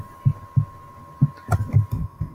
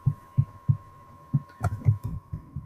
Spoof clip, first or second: second